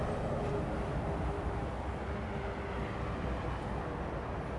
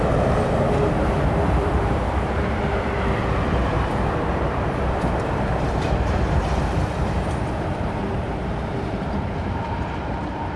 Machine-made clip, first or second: second